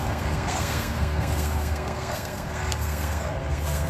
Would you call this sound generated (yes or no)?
yes